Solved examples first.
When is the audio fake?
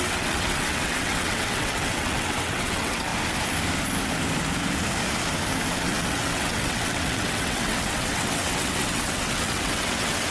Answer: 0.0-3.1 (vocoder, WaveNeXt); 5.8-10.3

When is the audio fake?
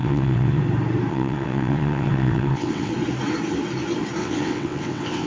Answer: 0.0-0.6 (vocoder, WaveNeXt); 1.1-2.9; 4.2-5.3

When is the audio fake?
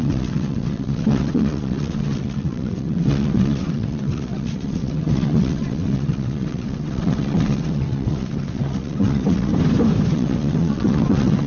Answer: 0.0-9.5 (vocoder, WaveNeXt); 10.1-11.5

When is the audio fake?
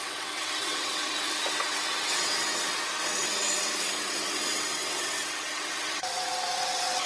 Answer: 0.0-7.1 (vocoder, WaveNeXt)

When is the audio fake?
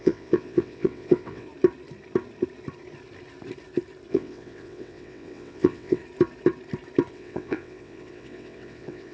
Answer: 0.0-1.5 (vocoder, WaveNeXt); 4.1-6.0; 7.1-9.1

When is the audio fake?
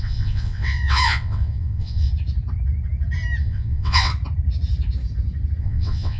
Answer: 0.0-2.1 (vocoder, WaveNeXt); 3.4-4.1; 5.6-6.2